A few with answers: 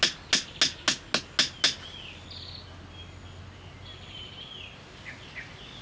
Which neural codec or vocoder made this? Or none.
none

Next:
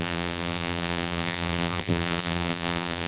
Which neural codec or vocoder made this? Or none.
vocoder, BigVGAN v2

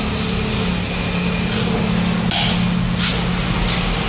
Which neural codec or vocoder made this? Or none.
none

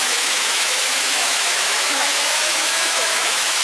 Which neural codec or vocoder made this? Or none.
autoencoder, DAC-VAE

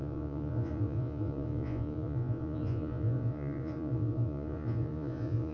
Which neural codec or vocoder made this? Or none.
vocoder, Vocos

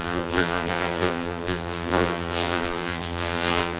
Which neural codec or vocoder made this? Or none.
vocoder, BigVGAN v2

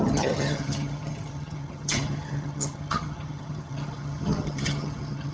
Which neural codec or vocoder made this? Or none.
vocoder, HiFi-GAN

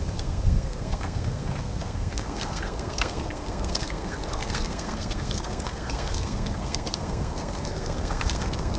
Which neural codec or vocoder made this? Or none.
codec, SNAC